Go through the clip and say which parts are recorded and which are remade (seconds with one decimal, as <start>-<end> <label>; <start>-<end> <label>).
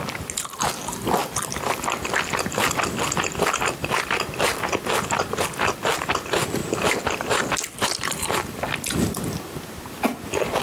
0.0-10.6 recorded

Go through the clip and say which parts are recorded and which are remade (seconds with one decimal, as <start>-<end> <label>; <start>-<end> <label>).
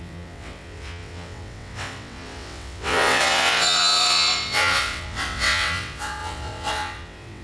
0.0-7.4 remade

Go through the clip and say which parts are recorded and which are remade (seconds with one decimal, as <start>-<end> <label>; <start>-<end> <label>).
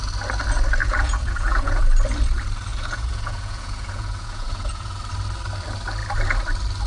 0.0-0.8 recorded; 0.8-1.8 remade; 1.8-2.7 recorded; 2.7-5.0 remade; 5.0-6.9 recorded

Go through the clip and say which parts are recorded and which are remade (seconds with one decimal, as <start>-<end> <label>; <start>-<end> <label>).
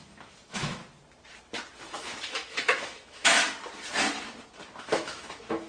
0.0-0.8 remade; 0.8-1.7 recorded; 1.7-3.4 remade; 3.4-4.8 recorded; 4.8-5.7 remade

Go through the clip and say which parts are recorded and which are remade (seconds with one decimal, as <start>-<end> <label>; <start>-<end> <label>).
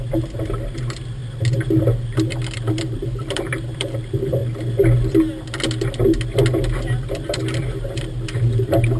0.0-1.2 remade; 1.2-1.8 recorded; 1.8-4.4 remade; 4.4-7.1 recorded; 7.1-9.0 remade